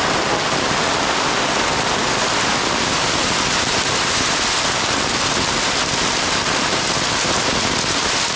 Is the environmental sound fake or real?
real